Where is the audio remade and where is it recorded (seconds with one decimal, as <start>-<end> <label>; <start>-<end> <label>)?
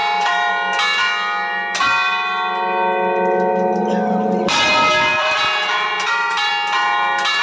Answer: 0.0-0.5 remade; 0.5-5.1 recorded; 5.1-6.5 remade; 6.5-7.4 recorded